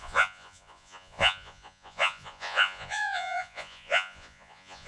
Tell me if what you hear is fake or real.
fake